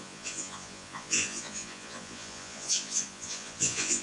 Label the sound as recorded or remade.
remade